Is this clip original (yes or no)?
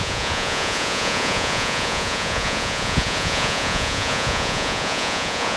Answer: no